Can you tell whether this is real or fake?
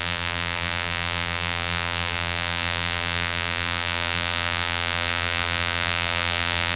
fake